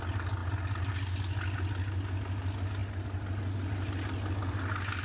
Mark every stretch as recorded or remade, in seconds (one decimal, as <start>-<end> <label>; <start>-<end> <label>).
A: 0.0-5.0 recorded